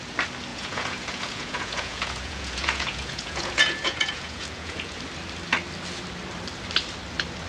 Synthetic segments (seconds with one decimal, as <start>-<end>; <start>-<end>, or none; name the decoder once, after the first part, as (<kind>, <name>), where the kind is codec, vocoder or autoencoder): 0.5-5.0 (vocoder, Vocos)